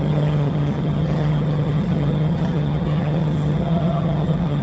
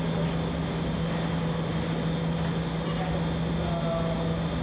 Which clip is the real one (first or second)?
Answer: second